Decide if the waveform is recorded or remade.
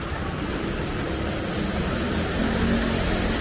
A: recorded